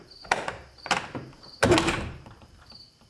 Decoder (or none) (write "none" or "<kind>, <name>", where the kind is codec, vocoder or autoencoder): vocoder, BigVGAN v2